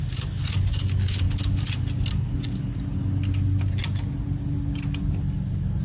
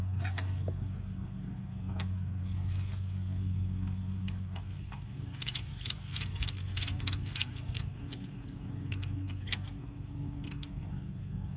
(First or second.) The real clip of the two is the first